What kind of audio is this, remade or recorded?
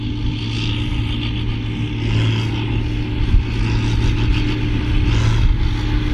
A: recorded